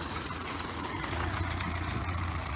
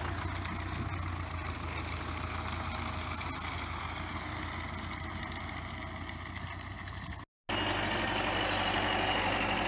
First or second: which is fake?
first